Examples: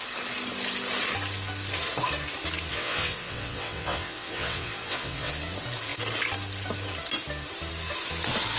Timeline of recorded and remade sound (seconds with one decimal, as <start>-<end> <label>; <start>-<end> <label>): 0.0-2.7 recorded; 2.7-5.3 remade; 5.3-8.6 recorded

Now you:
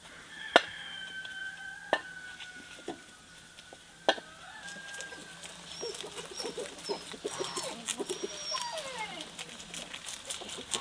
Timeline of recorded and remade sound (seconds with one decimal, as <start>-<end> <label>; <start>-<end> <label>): 0.0-10.8 recorded

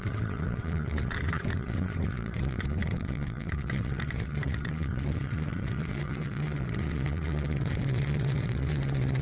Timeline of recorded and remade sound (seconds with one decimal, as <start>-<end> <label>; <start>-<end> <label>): 0.0-9.2 remade

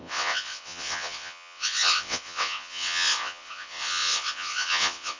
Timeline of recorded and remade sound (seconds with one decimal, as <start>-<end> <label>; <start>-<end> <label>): 0.0-5.2 remade

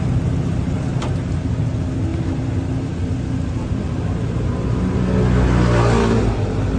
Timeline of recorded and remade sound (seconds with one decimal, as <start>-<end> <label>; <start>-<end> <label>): 0.0-6.8 recorded

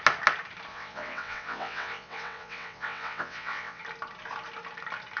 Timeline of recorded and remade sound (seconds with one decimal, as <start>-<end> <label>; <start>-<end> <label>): 0.0-0.7 recorded; 0.7-3.8 remade; 3.8-5.2 recorded